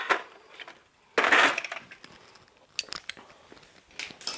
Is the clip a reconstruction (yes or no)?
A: no